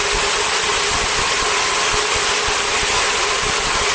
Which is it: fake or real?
real